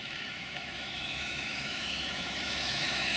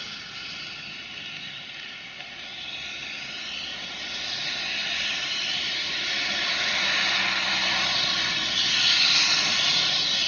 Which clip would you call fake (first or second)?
first